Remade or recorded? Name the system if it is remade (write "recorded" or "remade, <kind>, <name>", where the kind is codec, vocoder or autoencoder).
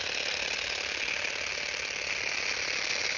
recorded